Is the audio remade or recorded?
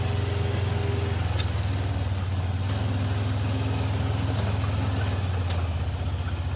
recorded